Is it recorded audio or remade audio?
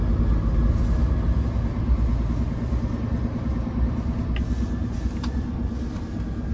recorded